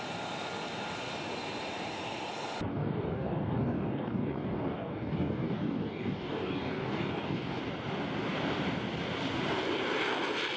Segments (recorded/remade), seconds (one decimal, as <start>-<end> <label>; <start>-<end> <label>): 0.0-2.7 recorded; 2.7-7.6 remade; 7.6-10.6 recorded